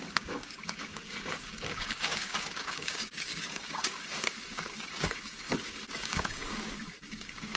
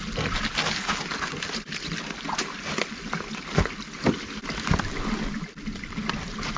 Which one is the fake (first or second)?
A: first